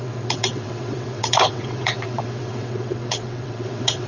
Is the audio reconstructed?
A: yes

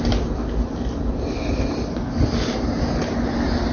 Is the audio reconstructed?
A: no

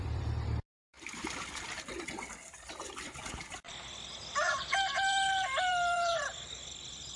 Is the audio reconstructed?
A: yes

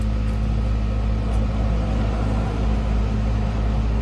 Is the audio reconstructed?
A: no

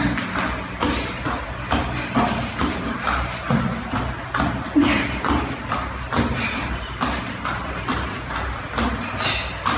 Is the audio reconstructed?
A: no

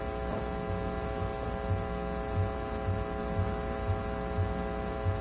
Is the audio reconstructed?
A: no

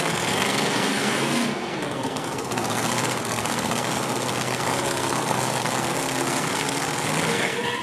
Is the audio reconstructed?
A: yes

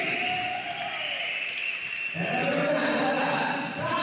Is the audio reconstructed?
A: no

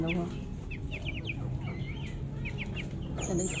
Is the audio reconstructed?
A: no